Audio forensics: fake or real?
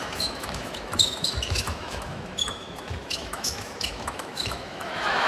fake